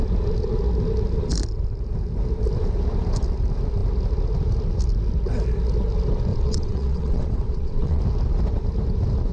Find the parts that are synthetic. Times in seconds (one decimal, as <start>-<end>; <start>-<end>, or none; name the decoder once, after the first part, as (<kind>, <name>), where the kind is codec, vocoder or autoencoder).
6.3-8.0 (vocoder, WaveNeXt)